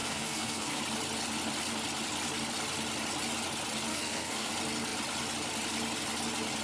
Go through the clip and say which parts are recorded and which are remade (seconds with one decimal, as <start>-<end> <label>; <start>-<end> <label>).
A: 0.0-0.8 remade; 0.8-3.9 recorded; 3.9-4.5 remade; 4.5-6.6 recorded